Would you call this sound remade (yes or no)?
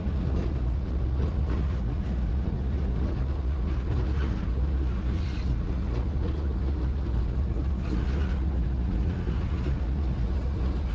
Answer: yes